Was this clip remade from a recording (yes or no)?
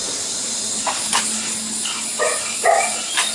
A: no